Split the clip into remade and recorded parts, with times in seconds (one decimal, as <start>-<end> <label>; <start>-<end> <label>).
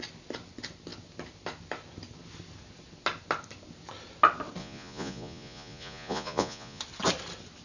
0.0-4.6 recorded; 4.6-6.8 remade; 6.8-7.6 recorded